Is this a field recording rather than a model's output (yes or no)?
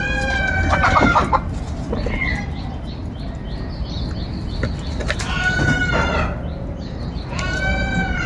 yes